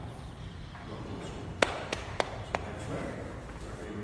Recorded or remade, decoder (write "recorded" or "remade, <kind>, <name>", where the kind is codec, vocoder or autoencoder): remade, vocoder, BigVGAN v2